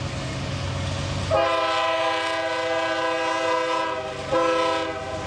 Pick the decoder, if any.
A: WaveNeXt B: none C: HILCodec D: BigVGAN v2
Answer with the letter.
B